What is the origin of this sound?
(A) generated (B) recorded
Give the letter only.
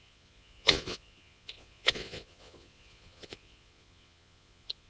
A